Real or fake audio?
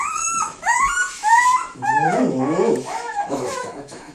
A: fake